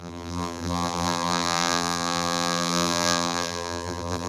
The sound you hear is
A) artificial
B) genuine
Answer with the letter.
A